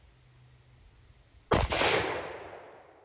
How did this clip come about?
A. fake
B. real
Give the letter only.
B